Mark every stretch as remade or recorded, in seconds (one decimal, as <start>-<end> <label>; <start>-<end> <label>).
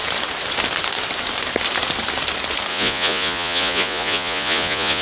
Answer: 0.0-2.7 recorded; 2.7-5.0 remade